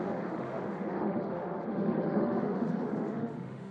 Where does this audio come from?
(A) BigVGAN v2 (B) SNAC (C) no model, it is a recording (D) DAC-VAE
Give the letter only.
D